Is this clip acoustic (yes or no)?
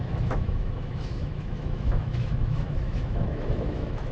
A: no